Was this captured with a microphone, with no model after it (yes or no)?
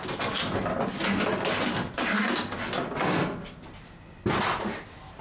yes